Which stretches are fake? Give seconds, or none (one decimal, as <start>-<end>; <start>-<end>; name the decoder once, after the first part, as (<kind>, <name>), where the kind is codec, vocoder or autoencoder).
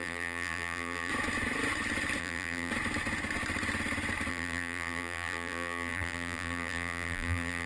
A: 0.0-1.1 (vocoder, BigVGAN v2); 2.2-2.7; 4.3-7.7